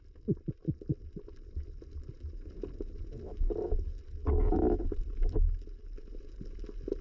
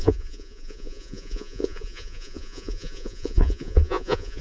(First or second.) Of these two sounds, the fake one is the second